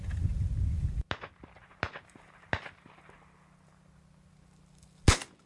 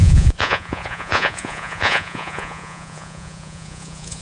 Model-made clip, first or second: second